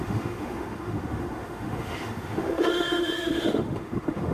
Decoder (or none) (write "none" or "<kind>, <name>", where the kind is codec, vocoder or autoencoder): autoencoder, DAC-VAE